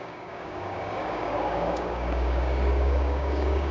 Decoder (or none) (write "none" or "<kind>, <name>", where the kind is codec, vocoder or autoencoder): codec, DAC